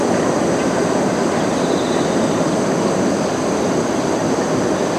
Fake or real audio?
real